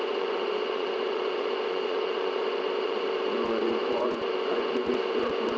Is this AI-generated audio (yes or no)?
yes